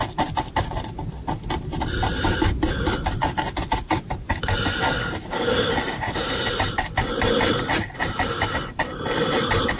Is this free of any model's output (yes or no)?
yes